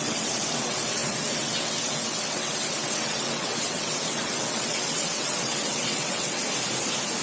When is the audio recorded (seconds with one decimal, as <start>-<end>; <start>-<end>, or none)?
6.4-7.2